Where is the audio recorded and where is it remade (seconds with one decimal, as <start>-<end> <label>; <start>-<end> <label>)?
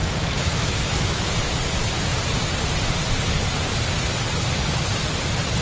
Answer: 0.0-1.3 remade; 1.3-5.6 recorded